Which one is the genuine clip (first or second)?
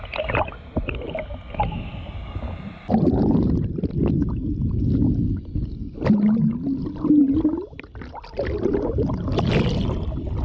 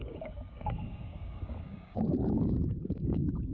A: first